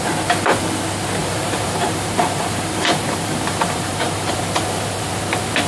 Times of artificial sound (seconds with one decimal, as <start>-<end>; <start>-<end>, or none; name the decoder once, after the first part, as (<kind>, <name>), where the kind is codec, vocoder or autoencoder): 1.2-4.6 (vocoder, BigVGAN v2)